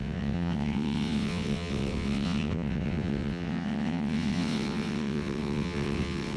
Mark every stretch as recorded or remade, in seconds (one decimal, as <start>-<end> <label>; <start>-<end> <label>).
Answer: 0.0-6.4 remade